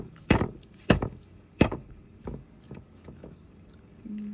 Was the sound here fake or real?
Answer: fake